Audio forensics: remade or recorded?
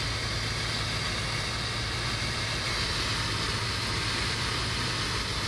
recorded